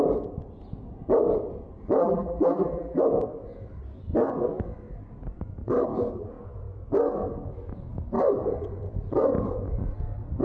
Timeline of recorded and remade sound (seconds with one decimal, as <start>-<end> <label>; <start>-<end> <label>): 0.0-2.0 recorded; 2.0-3.0 remade; 3.0-10.4 recorded